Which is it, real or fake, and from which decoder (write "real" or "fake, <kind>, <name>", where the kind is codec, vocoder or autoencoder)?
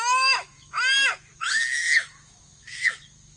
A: fake, autoencoder, DAC-VAE